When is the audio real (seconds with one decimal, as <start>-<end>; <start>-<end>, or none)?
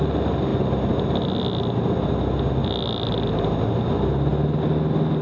0.0-5.2